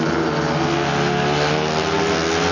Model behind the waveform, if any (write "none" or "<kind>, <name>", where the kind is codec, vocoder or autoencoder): none